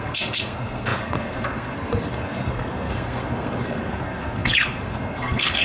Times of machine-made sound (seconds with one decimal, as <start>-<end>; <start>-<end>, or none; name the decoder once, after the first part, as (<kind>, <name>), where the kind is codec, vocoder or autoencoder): 0.0-5.6 (codec, SNAC)